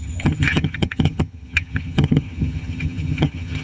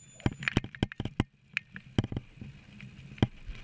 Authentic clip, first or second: second